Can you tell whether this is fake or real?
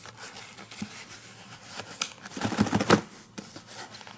real